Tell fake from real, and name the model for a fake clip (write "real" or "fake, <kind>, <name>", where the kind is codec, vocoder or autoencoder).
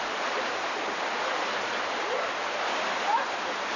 real